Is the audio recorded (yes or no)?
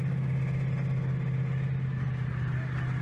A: yes